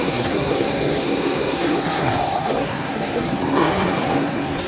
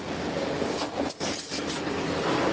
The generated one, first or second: first